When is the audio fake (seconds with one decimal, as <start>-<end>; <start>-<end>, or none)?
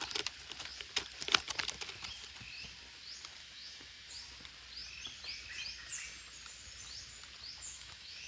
3.4-4.1; 7.7-8.3